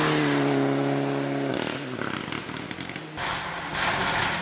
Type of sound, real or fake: real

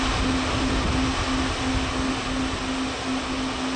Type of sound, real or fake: real